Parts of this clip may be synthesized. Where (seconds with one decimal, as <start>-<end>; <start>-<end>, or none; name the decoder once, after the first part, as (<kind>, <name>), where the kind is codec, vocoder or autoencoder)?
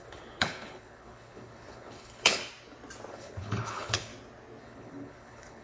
0.0-2.4 (codec, HILCodec); 3.1-4.1; 4.6-5.6